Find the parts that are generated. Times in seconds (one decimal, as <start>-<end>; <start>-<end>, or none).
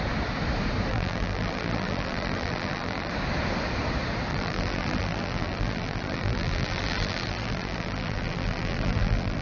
0.9-3.1; 4.3-9.4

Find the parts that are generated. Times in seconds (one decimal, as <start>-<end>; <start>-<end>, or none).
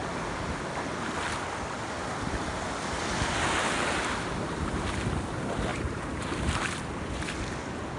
5.7-6.3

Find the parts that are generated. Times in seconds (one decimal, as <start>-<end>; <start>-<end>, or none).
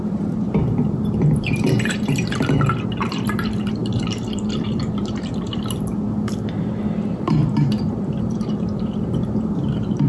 0.0-10.1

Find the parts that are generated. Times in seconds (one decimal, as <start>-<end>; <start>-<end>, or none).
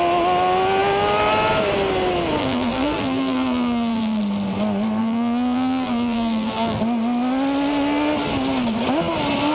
2.4-4.2; 5.0-6.8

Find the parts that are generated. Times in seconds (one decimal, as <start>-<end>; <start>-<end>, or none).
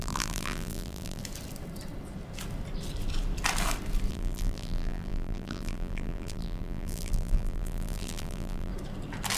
0.0-1.2; 4.1-8.7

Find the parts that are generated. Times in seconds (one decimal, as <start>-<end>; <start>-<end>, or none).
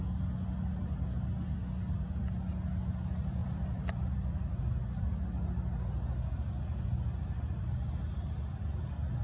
3.4-4.5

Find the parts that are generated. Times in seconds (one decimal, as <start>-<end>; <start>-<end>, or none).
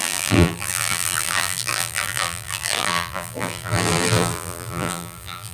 0.0-5.5